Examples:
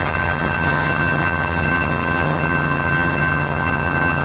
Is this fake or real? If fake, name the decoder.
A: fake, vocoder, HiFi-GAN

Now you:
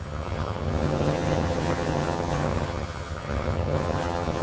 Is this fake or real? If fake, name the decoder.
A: fake, vocoder, HiFi-GAN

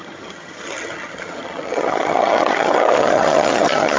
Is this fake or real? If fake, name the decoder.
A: fake, vocoder, HiFi-GAN